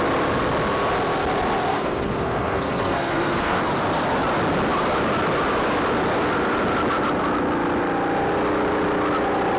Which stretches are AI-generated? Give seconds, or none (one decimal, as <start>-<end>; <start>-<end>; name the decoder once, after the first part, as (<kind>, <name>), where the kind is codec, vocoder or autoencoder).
1.7-3.6 (codec, SNAC)